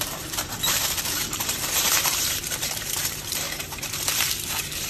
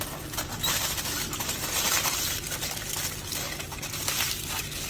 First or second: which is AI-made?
first